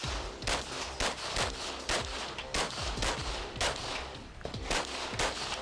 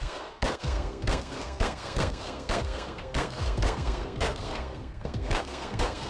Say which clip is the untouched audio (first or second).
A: first